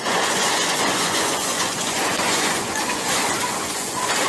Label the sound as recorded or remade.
remade